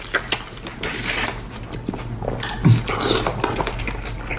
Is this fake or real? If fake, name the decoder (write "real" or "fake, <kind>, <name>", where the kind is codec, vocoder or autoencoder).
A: real